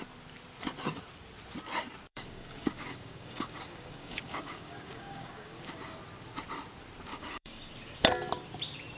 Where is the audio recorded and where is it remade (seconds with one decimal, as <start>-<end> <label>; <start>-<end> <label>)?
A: 0.0-2.1 recorded; 2.1-6.0 remade; 6.0-7.1 recorded; 7.1-7.7 remade; 7.7-9.0 recorded